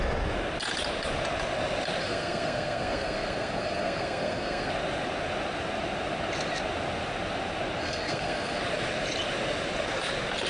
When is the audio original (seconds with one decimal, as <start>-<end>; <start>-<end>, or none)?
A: 0.0-2.0; 4.7-7.8; 8.6-10.5